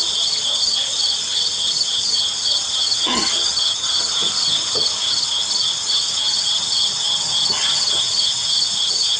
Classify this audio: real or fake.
fake